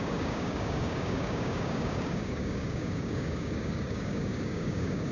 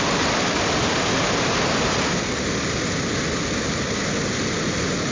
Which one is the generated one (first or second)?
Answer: first